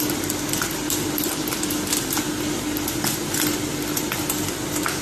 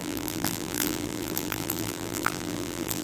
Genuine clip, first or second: first